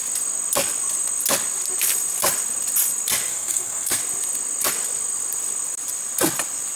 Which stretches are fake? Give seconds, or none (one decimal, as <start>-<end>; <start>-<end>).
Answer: 3.3-4.0